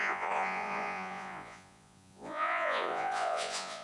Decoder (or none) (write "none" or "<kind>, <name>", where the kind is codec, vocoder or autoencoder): vocoder, Vocos